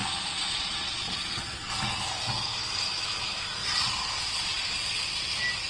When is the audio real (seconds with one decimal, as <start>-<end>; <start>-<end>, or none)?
1.7-3.6; 4.8-5.7